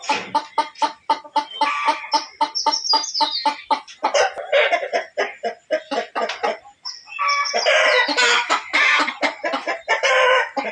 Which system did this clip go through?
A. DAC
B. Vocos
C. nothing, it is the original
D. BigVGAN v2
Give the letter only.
C